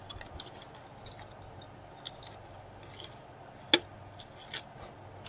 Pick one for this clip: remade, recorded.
recorded